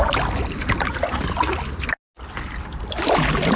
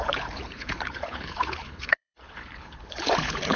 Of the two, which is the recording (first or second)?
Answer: first